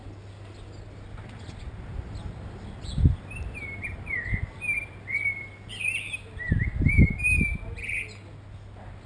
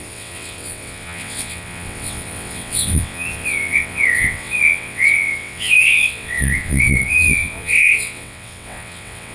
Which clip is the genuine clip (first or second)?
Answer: first